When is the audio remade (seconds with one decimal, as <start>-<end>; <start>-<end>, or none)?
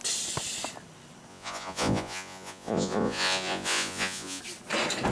1.3-4.4